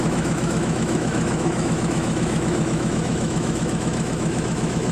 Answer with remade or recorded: remade